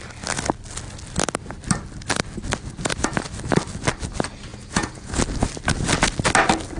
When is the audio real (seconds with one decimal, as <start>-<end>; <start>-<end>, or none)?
0.0-4.5; 5.2-6.8